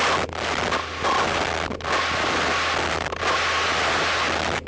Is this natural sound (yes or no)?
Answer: yes